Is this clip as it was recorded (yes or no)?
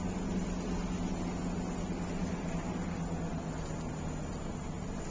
yes